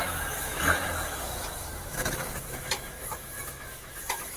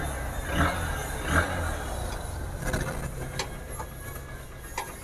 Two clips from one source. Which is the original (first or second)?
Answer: second